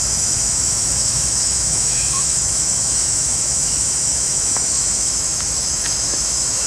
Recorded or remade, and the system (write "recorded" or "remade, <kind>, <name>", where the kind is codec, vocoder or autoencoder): remade, autoencoder, DAC-VAE